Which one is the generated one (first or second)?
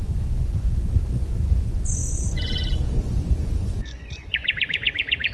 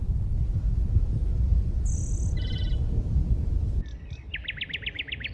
first